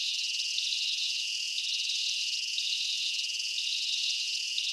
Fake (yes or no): yes